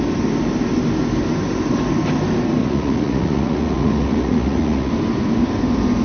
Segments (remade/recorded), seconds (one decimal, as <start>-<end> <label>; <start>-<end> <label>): 0.0-2.6 recorded; 2.6-4.9 remade; 4.9-6.0 recorded